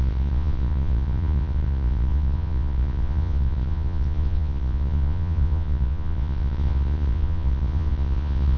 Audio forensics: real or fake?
fake